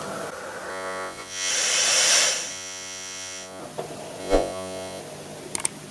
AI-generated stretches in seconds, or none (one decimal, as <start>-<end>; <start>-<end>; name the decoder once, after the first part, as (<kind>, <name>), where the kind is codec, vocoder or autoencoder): 0.7-1.5 (vocoder, Vocos); 2.5-3.6; 4.2-5.0